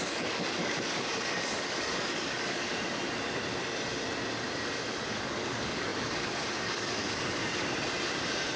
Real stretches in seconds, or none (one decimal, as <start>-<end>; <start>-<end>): 2.7-5.1; 7.4-8.6